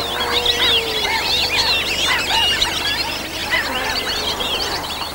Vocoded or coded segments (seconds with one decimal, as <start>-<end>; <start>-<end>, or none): none